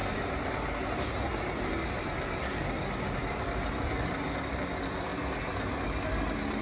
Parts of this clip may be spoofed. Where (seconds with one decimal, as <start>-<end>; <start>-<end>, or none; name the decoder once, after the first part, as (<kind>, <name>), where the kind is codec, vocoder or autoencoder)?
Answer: 0.0-0.6 (vocoder, BigVGAN v2); 3.2-4.4